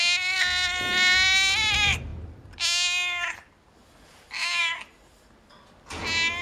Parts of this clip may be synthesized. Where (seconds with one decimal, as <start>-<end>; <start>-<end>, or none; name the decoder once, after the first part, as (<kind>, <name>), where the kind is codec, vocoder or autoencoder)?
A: none